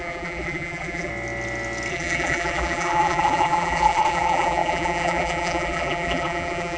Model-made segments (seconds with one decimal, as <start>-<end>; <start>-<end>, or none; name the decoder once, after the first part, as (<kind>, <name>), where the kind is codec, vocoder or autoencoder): 0.0-1.1 (vocoder, BigVGAN v2); 1.9-6.8